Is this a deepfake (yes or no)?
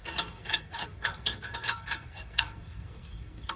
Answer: yes